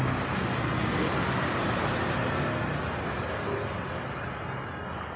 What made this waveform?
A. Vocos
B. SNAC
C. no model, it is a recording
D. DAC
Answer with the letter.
C